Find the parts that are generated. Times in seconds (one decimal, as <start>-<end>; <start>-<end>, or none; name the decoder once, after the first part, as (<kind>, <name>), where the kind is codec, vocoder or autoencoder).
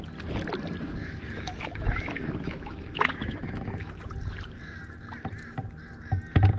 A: 1.0-3.9 (autoencoder, DAC-VAE)